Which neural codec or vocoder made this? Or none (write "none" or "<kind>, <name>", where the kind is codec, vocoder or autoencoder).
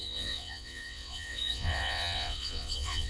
vocoder, WaveNeXt